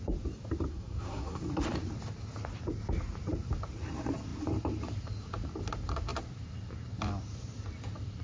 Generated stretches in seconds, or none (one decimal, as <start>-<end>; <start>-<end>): 0.7-1.4